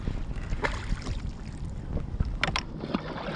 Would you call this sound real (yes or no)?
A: yes